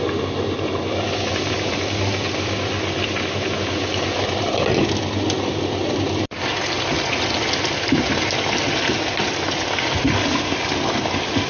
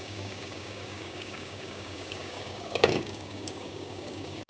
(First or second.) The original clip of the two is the first